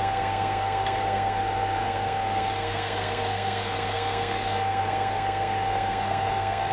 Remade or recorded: remade